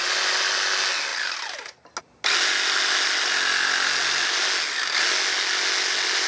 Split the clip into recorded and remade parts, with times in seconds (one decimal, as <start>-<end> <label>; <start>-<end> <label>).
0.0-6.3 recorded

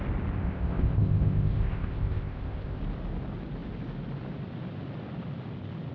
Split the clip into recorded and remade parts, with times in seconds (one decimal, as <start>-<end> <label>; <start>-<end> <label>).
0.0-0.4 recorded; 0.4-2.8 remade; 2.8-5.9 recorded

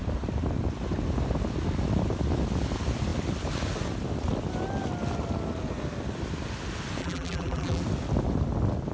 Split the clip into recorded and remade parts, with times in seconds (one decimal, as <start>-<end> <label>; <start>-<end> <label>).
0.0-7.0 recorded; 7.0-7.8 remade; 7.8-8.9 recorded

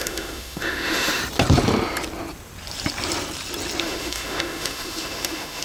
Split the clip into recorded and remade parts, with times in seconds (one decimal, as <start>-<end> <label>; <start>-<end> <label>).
0.0-1.2 remade; 1.2-3.8 recorded; 3.8-5.6 remade